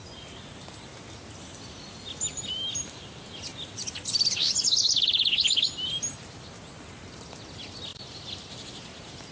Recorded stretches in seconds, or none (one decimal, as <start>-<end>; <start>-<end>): 0.0-9.3